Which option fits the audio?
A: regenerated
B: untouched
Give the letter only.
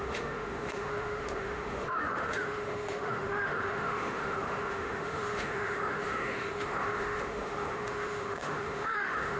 A